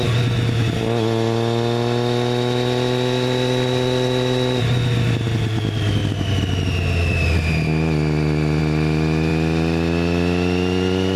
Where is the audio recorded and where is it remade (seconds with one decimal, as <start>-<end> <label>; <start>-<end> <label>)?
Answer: 0.0-11.2 recorded